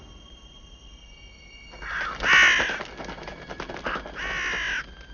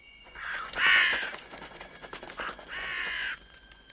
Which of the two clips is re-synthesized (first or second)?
second